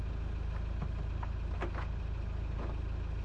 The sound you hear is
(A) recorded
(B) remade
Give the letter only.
A